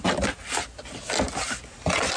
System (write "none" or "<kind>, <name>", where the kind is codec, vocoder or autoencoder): none